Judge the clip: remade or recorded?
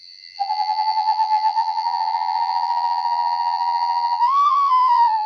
remade